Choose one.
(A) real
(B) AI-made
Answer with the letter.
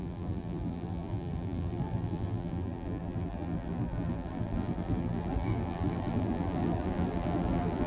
B